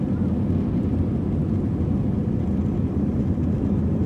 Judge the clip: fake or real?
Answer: real